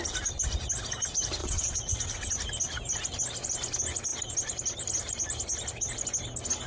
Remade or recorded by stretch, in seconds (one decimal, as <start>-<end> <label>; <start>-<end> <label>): 0.0-1.4 recorded; 1.4-2.3 remade; 2.3-6.7 recorded